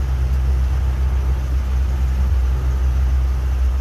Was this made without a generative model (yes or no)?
yes